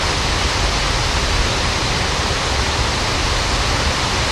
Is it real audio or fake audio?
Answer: real